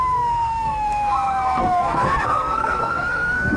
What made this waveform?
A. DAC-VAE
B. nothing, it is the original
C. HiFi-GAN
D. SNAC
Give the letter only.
D